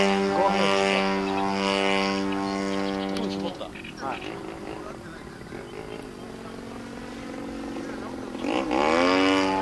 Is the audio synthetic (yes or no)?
no